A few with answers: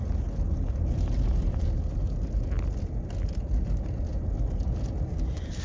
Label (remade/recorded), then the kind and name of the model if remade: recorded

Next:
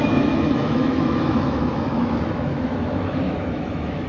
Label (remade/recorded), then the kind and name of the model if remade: remade, autoencoder, DAC-VAE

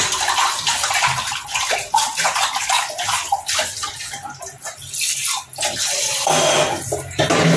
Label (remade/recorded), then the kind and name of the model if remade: recorded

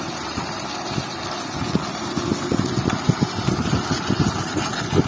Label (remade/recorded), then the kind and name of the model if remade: recorded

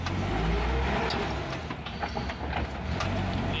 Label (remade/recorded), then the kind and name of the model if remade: recorded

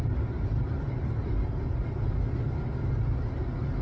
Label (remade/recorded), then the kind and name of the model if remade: recorded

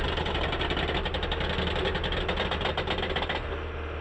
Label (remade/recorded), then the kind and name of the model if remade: recorded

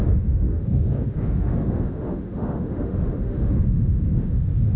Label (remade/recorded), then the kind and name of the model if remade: remade, autoencoder, DAC-VAE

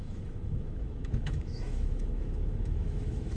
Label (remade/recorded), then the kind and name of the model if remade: remade, autoencoder, DAC-VAE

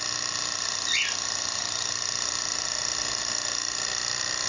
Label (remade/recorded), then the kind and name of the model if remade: recorded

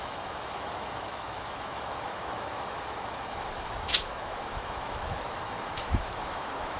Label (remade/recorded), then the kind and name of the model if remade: remade, autoencoder, DAC-VAE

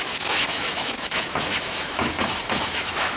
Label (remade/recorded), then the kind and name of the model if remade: remade, autoencoder, DAC-VAE